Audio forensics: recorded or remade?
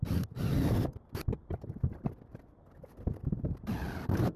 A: recorded